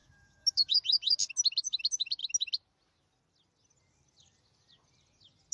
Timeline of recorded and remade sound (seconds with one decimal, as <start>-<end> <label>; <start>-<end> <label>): 0.0-0.7 remade; 0.7-5.5 recorded